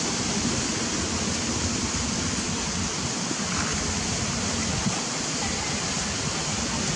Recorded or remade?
recorded